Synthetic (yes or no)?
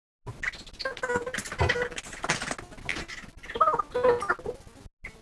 no